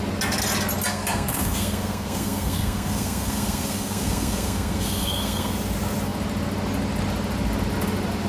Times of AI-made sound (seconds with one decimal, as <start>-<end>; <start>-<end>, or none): 0.9-5.5

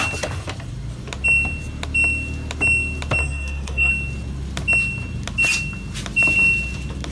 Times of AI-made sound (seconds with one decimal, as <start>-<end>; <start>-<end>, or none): 3.2-3.9

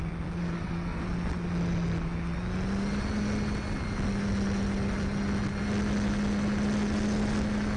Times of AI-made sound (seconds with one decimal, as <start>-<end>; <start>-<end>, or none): 0.4-1.0

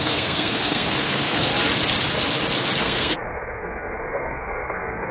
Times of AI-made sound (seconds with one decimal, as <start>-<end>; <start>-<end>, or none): 0.0-1.5; 2.8-5.1

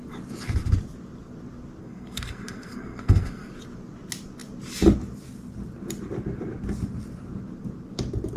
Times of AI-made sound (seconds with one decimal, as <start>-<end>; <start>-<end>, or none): 1.8-3.5

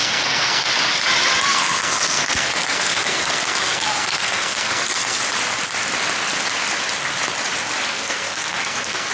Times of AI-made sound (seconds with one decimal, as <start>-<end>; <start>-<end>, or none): 0.0-0.7; 1.5-5.2; 7.9-9.1

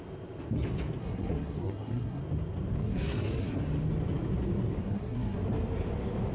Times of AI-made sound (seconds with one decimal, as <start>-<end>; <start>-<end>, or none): 1.0-2.2; 2.8-3.6; 4.8-5.4